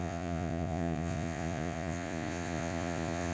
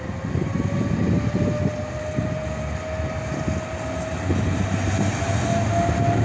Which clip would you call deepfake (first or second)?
first